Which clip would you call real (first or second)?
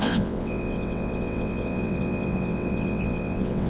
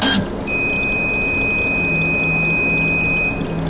second